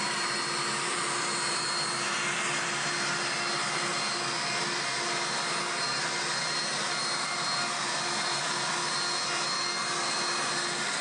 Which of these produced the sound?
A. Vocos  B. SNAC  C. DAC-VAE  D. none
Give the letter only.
D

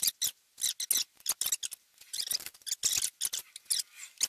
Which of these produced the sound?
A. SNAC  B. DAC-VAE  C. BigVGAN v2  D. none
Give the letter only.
D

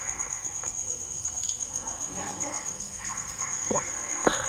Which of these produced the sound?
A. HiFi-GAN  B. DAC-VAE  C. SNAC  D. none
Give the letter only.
C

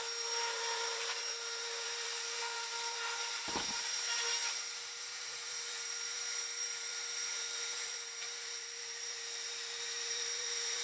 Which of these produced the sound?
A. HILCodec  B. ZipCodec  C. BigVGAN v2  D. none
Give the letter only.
C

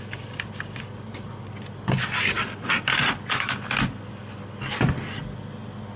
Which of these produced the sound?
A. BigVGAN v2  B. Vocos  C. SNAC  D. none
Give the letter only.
D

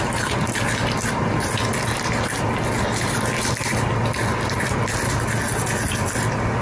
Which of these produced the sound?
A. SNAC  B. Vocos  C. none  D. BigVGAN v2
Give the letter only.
C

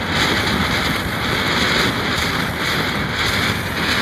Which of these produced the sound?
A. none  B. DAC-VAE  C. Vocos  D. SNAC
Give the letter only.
A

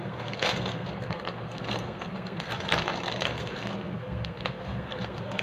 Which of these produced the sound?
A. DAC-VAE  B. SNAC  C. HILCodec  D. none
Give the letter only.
B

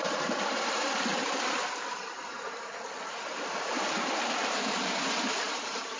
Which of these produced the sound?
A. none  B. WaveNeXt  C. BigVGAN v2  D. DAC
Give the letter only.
C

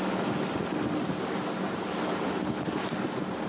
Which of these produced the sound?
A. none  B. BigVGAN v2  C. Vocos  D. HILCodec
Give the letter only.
A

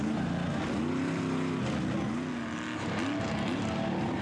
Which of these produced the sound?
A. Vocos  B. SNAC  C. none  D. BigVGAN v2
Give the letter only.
C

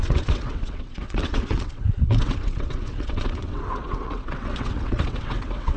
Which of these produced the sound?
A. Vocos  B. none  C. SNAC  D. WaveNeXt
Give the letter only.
D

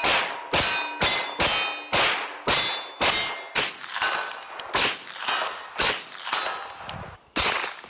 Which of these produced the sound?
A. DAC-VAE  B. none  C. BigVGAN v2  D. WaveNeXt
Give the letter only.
B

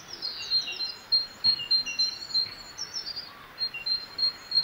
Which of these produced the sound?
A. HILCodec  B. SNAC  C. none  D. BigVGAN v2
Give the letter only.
C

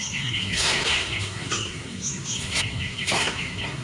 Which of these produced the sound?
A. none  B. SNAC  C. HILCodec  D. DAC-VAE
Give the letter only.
B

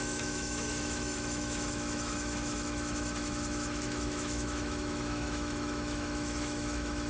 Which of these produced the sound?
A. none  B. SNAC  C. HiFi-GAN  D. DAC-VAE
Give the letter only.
D